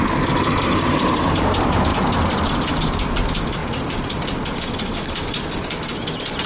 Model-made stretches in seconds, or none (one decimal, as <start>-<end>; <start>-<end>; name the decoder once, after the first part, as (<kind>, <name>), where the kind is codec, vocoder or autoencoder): none